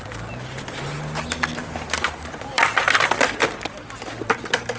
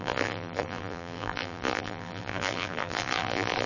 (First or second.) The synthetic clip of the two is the second